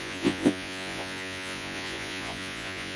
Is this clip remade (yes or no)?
yes